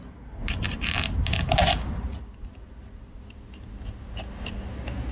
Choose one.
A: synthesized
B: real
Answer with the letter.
B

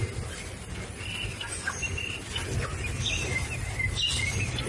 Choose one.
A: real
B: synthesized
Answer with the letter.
A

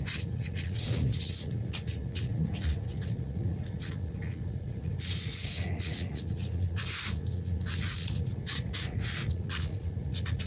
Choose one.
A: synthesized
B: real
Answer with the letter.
A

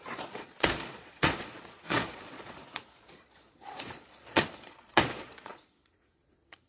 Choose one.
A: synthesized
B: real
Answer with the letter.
A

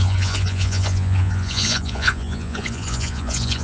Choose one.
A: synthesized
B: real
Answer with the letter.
A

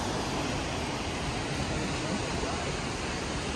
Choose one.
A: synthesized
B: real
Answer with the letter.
B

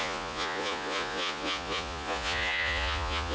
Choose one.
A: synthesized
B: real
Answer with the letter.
A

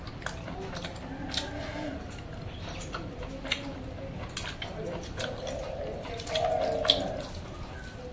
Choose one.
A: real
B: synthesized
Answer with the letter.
A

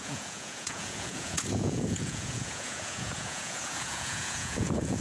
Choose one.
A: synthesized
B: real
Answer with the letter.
A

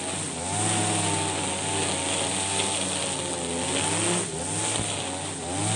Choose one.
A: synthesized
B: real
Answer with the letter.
B